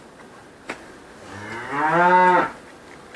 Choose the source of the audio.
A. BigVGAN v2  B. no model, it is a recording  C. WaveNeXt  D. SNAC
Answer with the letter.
B